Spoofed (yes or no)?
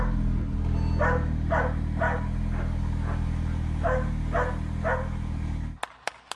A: no